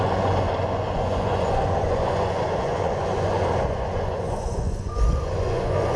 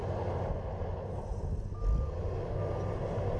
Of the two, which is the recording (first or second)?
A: second